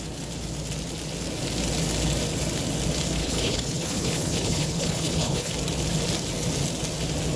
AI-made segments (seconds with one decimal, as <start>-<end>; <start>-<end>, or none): 3.2-5.5